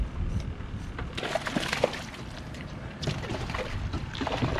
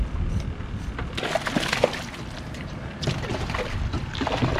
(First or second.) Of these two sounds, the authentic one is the second